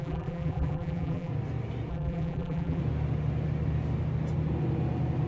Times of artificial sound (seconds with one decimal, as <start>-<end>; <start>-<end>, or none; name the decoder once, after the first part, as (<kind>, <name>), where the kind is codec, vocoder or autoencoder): 0.0-1.3 (vocoder, BigVGAN v2); 1.9-2.8